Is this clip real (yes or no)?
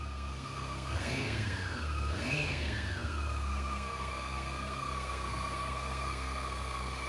no